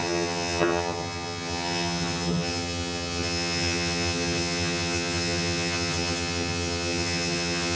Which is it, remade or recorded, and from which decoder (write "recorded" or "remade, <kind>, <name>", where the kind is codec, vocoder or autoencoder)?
remade, vocoder, HiFi-GAN